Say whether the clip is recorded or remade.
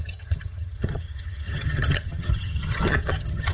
remade